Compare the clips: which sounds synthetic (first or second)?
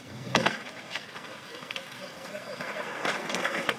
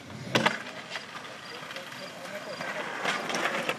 first